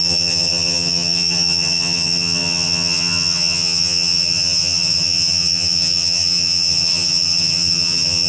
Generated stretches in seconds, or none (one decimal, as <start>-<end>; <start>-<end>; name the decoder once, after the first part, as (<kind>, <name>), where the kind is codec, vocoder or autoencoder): 0.0-8.3 (vocoder, HiFi-GAN)